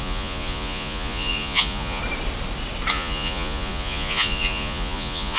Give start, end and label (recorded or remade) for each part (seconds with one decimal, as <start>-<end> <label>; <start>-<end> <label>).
0.0-2.0 remade; 2.0-2.9 recorded; 2.9-5.4 remade